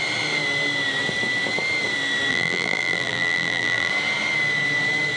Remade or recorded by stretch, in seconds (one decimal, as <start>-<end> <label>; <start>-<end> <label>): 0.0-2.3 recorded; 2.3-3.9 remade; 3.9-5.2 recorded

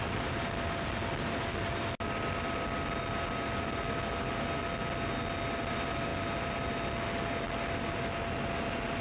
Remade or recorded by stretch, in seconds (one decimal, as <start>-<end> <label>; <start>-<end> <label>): 0.0-9.0 recorded

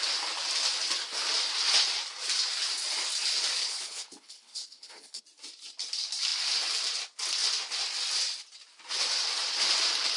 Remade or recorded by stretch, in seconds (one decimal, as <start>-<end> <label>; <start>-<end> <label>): 0.0-3.6 recorded; 3.6-5.2 remade; 5.2-10.2 recorded

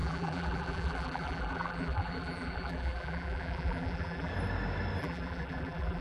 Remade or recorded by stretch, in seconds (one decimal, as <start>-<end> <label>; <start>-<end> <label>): 0.0-4.3 remade; 4.3-5.0 recorded; 5.0-6.0 remade

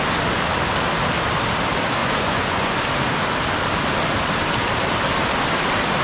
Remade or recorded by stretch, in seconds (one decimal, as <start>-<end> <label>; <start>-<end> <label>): 0.0-2.0 recorded; 2.0-2.8 remade; 2.8-6.0 recorded